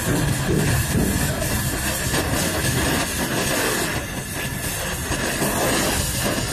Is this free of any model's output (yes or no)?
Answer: yes